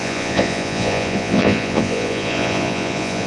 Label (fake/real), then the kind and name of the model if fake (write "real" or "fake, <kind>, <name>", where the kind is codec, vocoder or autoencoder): fake, vocoder, Vocos